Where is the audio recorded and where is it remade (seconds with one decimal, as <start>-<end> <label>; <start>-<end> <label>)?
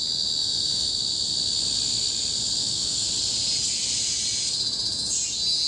0.0-0.4 recorded; 0.4-1.0 remade; 1.0-2.6 recorded; 2.6-3.1 remade; 3.1-5.7 recorded